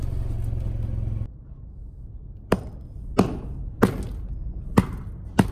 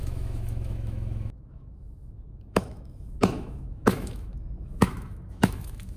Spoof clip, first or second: second